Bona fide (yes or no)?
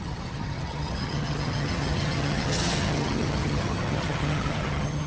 no